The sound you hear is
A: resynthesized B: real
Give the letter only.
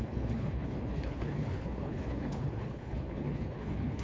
A